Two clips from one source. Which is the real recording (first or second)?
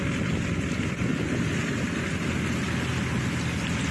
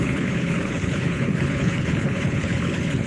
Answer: first